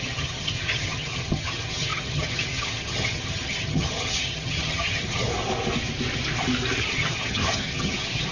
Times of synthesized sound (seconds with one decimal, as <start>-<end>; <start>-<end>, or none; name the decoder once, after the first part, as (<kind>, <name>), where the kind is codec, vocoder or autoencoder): 0.0-5.3 (vocoder, HiFi-GAN); 6.8-8.3